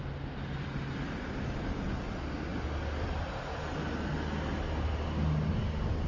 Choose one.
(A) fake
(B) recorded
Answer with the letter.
B